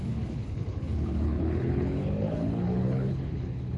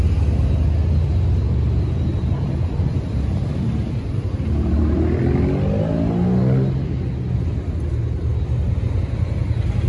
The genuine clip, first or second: second